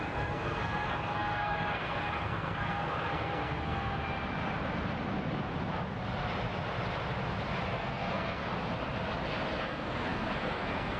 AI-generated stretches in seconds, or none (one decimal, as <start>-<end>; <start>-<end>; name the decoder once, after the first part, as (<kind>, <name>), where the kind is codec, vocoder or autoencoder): 0.0-3.9 (codec, SNAC); 7.8-8.4; 9.6-11.0